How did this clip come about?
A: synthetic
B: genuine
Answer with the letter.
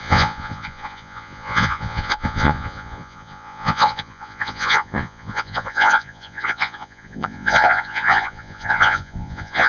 A